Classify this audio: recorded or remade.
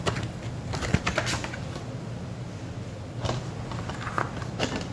recorded